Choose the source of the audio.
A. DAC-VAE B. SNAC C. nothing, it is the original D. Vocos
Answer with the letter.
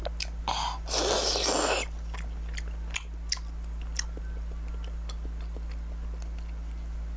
C